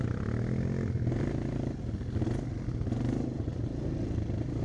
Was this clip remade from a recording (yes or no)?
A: no